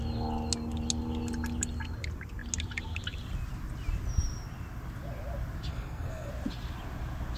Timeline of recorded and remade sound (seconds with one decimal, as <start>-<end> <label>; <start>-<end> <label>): 0.0-5.7 recorded; 5.7-6.3 remade; 6.3-7.4 recorded